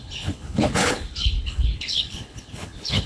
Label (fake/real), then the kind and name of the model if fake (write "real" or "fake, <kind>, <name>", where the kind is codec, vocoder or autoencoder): fake, codec, HILCodec